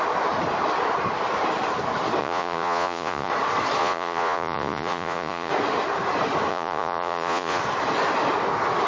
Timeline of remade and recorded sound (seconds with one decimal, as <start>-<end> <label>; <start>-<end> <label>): 0.0-2.2 recorded; 2.2-3.3 remade; 3.3-3.8 recorded; 3.8-5.5 remade; 5.5-6.5 recorded; 6.5-7.6 remade; 7.6-8.9 recorded

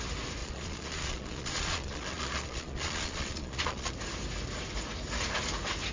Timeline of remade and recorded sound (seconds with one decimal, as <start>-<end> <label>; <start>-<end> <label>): 0.0-0.4 recorded; 0.4-3.9 remade; 3.9-5.9 recorded

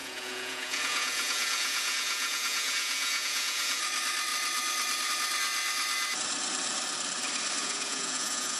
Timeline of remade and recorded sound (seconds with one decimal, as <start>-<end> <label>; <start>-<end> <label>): 0.0-3.8 remade; 3.8-7.6 recorded; 7.6-8.6 remade

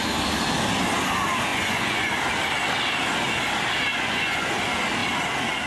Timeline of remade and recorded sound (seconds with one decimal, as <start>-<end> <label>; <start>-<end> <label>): 0.0-1.5 recorded; 1.5-2.1 remade; 2.1-3.9 recorded; 3.9-4.5 remade; 4.5-5.7 recorded

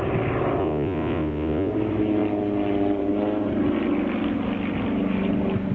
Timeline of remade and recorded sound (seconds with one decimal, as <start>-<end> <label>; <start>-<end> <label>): 0.0-0.6 recorded; 0.6-1.7 remade; 1.7-5.7 recorded

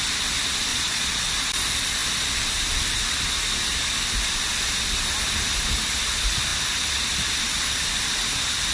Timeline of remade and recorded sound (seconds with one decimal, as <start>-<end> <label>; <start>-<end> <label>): 0.0-0.7 recorded; 0.7-1.2 remade; 1.2-8.7 recorded

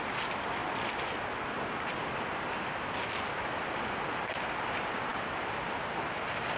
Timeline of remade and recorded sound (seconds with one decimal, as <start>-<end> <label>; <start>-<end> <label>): 0.0-6.6 recorded